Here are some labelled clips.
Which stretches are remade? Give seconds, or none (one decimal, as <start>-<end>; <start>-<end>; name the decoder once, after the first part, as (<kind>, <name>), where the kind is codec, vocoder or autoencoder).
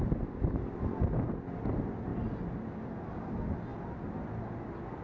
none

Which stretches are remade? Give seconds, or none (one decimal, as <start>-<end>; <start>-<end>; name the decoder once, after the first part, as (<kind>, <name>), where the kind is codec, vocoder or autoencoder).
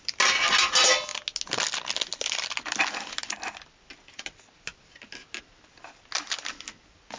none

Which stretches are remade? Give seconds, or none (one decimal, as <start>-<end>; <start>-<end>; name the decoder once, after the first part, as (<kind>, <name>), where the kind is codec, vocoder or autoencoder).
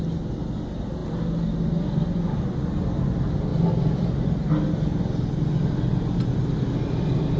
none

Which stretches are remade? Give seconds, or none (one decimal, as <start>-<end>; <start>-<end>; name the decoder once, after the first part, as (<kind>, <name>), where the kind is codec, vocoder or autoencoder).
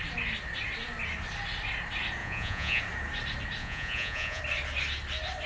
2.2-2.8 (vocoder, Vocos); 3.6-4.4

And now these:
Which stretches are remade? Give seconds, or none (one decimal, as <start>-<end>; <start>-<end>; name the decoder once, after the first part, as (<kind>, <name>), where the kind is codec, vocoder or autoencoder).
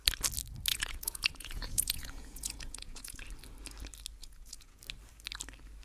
0.7-3.2 (vocoder, Vocos); 4.2-4.8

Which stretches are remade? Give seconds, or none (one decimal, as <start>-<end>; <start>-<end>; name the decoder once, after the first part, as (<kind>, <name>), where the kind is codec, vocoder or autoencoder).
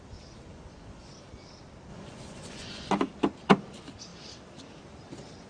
0.5-1.1 (vocoder, Vocos); 1.9-2.9